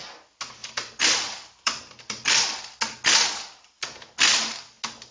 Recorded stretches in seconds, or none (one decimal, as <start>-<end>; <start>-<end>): 0.0-0.6; 2.4-5.1